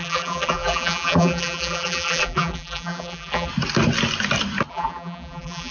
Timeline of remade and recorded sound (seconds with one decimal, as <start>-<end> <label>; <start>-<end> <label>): 0.0-3.5 remade; 3.5-4.7 recorded; 4.7-5.7 remade